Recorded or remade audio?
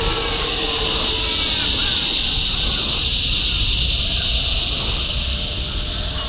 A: recorded